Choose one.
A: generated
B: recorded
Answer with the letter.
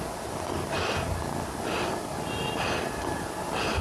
B